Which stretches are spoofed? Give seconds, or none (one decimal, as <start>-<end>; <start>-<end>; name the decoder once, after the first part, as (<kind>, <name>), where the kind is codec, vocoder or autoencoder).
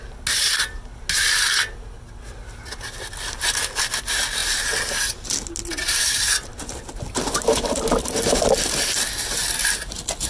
none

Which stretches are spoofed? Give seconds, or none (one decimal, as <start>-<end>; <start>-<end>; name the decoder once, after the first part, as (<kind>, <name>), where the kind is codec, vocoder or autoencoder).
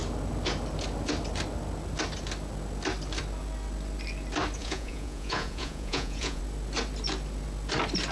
4.6-6.4 (vocoder, Vocos)